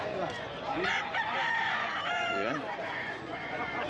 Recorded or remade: remade